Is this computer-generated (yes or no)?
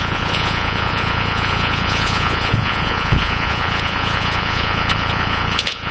yes